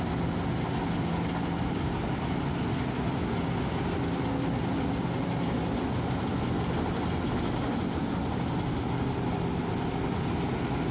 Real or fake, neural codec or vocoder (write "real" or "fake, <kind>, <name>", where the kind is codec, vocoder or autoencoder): real